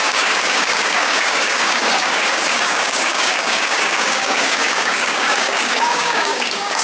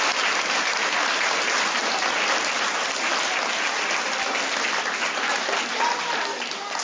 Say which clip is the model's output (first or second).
first